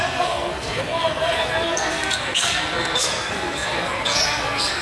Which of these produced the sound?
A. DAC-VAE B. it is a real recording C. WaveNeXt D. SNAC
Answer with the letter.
D